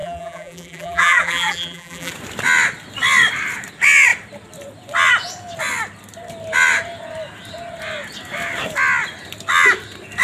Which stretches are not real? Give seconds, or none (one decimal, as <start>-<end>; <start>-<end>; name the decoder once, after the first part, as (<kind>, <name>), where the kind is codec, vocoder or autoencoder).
0.0-2.1 (vocoder, BigVGAN v2)